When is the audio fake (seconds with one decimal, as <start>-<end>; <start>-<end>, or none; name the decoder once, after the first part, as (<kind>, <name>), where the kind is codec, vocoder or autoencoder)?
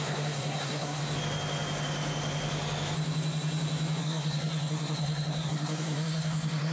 0.0-1.0 (codec, SNAC); 4.0-6.7